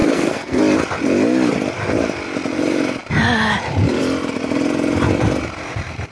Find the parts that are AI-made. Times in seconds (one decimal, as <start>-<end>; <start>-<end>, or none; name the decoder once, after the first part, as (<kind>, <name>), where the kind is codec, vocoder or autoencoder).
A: 0.0-0.6 (codec, SNAC)